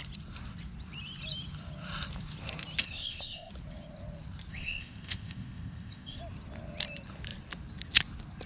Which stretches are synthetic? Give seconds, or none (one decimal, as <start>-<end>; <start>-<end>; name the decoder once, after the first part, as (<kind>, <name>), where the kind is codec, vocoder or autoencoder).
2.8-3.5 (codec, ZipCodec); 4.5-6.2